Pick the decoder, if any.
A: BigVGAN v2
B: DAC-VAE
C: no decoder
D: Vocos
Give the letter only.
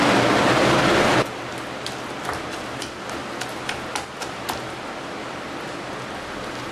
C